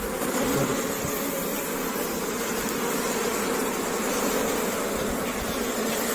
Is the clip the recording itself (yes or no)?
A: yes